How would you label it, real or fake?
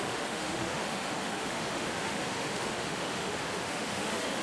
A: fake